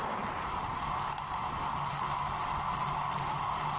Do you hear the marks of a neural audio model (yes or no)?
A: no